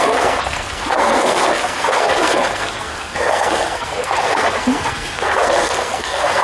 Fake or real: fake